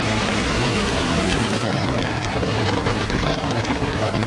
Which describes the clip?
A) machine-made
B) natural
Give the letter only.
A